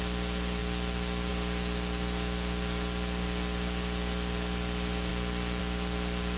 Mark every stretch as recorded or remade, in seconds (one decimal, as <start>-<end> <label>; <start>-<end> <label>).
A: 0.0-6.4 recorded